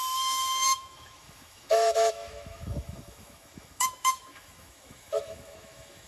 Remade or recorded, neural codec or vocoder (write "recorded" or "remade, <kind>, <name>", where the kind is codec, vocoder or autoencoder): remade, autoencoder, DAC-VAE